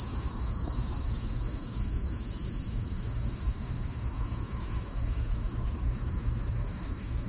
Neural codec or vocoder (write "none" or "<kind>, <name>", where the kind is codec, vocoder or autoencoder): autoencoder, DAC-VAE